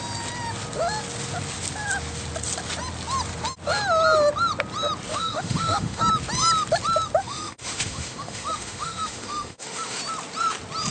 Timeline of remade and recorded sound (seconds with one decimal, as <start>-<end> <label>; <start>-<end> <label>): 0.0-5.1 recorded; 5.1-6.0 remade; 6.0-7.2 recorded; 7.2-10.0 remade; 10.0-10.9 recorded